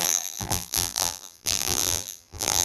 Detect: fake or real fake